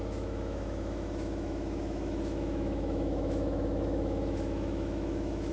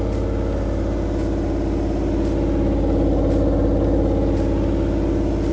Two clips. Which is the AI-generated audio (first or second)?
first